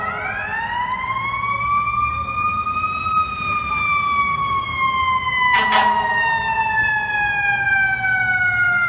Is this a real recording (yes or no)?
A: yes